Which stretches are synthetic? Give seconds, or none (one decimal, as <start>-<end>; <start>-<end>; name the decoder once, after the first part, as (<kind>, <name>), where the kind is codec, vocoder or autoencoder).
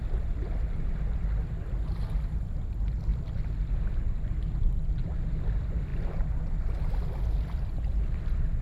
none